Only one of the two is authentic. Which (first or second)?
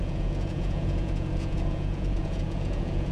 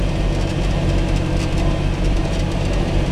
second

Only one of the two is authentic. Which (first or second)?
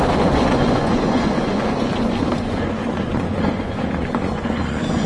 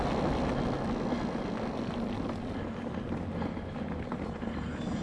second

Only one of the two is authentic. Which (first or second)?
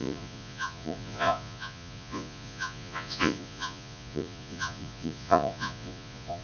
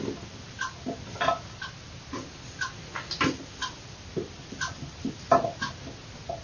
second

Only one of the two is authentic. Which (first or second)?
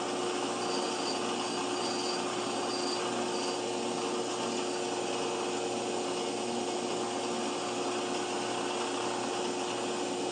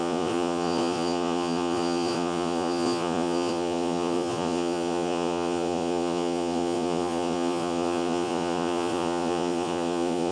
first